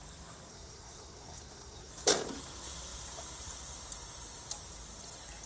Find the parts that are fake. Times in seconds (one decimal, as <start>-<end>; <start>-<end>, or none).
0.5-1.9